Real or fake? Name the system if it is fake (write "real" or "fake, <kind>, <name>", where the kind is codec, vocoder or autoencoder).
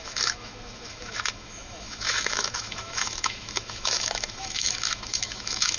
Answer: fake, autoencoder, DAC-VAE